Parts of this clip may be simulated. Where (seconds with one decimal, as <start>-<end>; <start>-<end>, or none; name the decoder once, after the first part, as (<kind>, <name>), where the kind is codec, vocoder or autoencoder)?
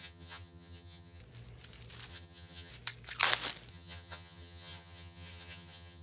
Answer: 0.0-1.2 (vocoder, HiFi-GAN); 2.1-2.7; 3.7-6.0